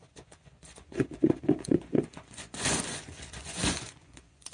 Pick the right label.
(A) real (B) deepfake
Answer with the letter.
B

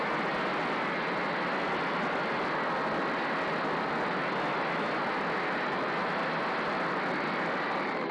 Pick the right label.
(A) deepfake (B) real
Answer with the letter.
B